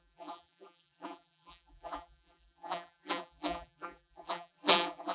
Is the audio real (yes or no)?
no